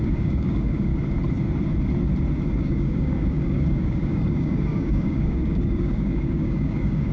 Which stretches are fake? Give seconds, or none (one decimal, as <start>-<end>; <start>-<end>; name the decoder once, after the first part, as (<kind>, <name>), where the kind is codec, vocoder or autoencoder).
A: 0.0-0.9 (codec, DAC); 2.6-7.1